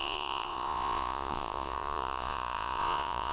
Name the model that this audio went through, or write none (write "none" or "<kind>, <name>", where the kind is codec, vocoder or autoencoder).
vocoder, Vocos